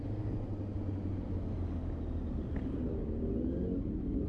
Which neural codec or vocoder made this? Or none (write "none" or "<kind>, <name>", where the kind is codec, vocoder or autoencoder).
none